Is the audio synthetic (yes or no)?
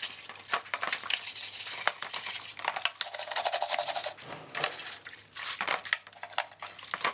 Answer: no